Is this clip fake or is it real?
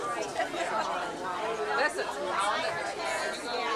real